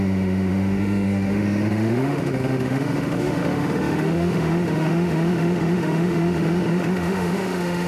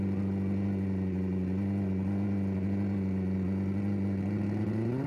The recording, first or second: second